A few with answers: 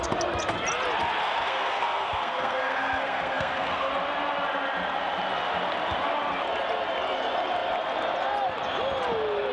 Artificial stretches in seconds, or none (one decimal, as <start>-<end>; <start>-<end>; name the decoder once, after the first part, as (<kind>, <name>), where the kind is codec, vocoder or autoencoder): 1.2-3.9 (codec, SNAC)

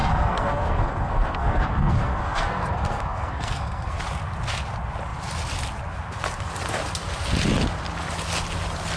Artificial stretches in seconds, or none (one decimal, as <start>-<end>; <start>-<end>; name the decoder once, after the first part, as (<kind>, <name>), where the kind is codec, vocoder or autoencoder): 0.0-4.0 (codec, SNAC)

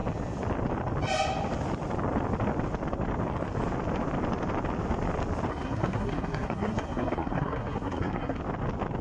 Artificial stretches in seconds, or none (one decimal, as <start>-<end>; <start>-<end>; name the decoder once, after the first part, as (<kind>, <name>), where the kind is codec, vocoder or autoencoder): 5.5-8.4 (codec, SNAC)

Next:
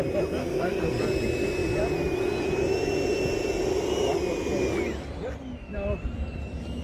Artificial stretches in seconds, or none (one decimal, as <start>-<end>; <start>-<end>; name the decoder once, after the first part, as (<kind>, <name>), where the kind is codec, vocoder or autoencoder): 0.4-1.0 (codec, SNAC)